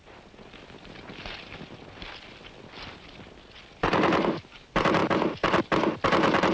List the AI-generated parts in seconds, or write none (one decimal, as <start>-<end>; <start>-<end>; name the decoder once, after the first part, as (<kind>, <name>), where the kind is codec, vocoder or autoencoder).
none

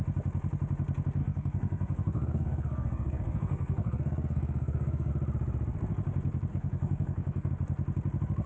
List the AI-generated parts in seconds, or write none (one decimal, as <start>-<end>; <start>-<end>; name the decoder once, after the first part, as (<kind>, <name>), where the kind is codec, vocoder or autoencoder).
1.2-5.1 (codec, SNAC); 6.5-7.5

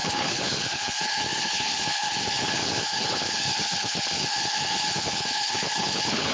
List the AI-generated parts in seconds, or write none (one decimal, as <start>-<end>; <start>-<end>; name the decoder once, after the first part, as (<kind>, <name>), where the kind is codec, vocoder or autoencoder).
0.0-6.3 (codec, HILCodec)

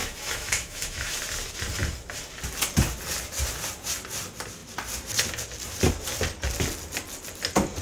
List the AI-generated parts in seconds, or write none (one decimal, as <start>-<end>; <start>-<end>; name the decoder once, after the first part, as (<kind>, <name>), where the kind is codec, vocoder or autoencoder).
0.0-1.2 (autoencoder, DAC-VAE)